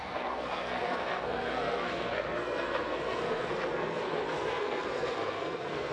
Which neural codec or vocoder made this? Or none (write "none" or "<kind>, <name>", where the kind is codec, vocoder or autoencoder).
codec, SNAC